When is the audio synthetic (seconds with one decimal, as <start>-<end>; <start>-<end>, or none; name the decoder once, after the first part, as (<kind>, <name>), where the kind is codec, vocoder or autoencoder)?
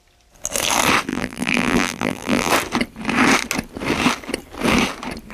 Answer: 1.1-2.5 (vocoder, BigVGAN v2)